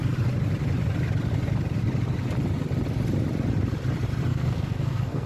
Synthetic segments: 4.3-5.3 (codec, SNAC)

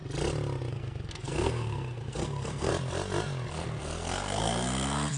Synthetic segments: 0.7-2.7 (codec, SNAC); 3.5-5.2

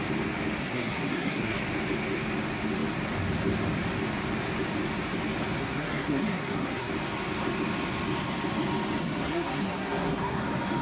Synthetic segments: 0.6-1.6 (codec, SNAC); 5.6-6.9; 9.0-10.4

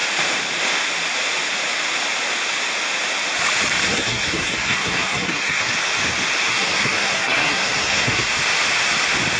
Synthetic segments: 3.9-5.7 (codec, SNAC); 6.5-8.3

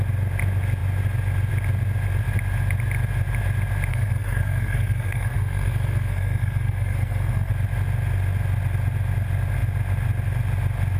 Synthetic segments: 3.9-7.5 (codec, SNAC)